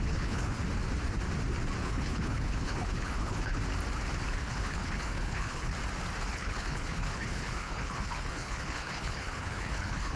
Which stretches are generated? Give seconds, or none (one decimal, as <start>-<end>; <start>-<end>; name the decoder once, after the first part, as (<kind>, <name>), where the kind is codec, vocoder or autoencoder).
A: 0.0-0.6 (codec, HILCodec); 1.8-3.6; 4.3-5.7; 6.3-10.2